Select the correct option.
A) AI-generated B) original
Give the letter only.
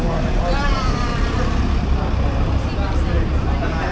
B